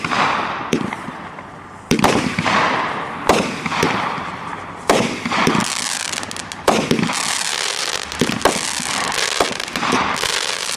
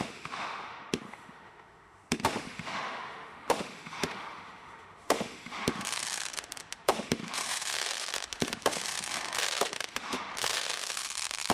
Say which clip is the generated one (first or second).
second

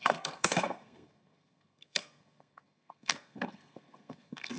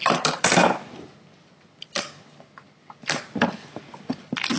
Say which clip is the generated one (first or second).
first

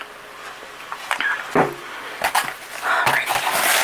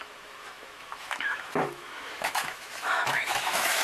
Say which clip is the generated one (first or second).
second